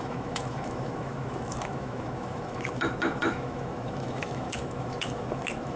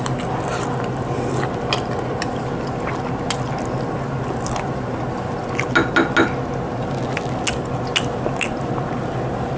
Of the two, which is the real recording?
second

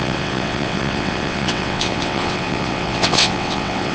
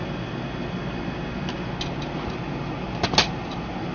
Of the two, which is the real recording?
second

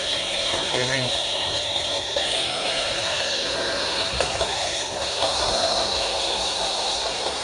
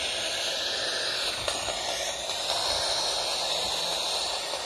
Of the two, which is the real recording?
second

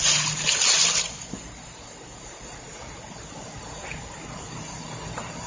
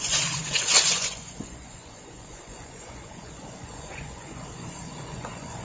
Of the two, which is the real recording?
first